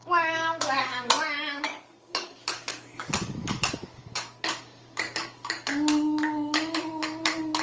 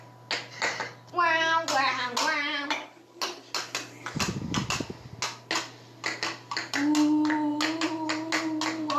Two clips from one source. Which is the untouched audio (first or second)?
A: second